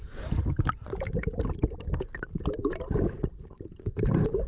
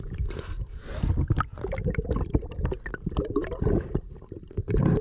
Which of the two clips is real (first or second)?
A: second